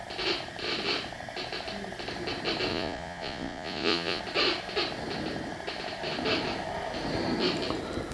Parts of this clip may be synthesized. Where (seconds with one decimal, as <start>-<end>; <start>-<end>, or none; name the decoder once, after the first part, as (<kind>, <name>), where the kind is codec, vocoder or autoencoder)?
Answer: 2.7-4.2 (vocoder, Vocos)